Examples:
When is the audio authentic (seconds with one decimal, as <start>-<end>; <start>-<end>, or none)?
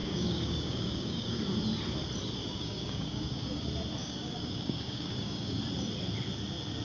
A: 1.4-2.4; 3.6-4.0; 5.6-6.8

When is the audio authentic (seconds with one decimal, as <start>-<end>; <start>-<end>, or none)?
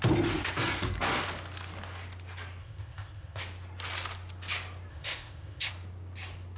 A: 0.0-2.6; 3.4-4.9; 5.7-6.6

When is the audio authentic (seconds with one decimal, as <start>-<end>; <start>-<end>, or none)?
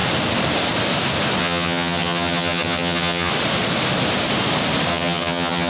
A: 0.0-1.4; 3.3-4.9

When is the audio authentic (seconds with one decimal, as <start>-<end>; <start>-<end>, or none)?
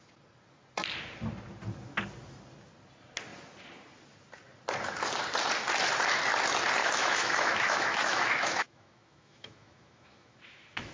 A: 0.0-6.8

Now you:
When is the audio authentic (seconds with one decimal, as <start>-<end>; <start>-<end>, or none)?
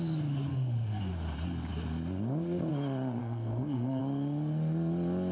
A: 0.0-0.5; 1.0-3.2; 4.0-5.3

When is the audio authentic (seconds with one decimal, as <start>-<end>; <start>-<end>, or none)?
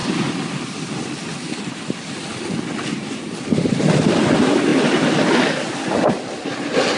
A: 0.0-7.0